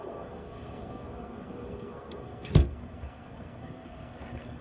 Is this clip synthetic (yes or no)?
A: yes